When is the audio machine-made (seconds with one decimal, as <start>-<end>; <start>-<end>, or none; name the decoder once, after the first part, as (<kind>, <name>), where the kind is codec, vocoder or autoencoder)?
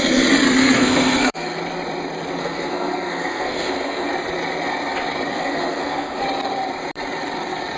0.6-1.6 (codec, SNAC); 2.4-4.1; 5.3-6.2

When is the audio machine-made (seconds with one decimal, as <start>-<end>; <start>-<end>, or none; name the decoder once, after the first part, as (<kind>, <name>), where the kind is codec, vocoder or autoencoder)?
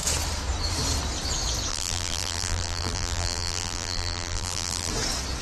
1.7-4.9 (vocoder, BigVGAN v2)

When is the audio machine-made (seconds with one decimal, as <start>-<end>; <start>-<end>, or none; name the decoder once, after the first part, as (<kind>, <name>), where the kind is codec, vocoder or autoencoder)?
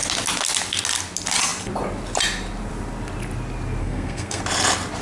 3.8-4.4 (codec, SNAC)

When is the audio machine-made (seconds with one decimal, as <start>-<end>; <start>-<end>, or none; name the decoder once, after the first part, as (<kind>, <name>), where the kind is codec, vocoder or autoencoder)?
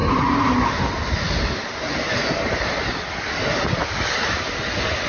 none